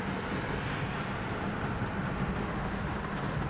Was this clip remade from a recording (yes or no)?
no